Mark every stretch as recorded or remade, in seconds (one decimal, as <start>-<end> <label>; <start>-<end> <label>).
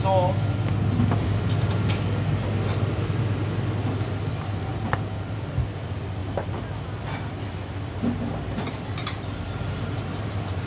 0.0-4.7 recorded; 4.7-5.5 remade; 5.5-6.2 recorded; 6.2-6.8 remade; 6.8-9.0 recorded; 9.0-10.7 remade